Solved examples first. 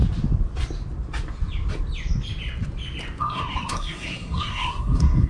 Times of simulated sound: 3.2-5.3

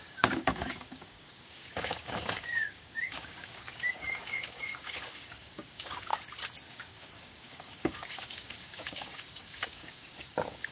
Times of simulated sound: 0.0-6.1; 6.7-10.7